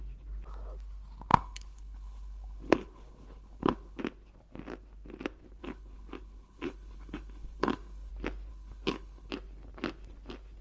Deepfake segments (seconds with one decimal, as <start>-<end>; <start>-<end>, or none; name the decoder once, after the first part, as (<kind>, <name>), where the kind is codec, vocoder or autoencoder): 1.3-4.0 (codec, HILCodec); 5.6-8.1; 8.5-9.3